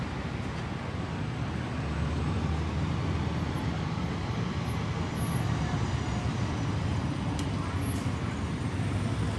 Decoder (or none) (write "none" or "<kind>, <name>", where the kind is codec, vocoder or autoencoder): none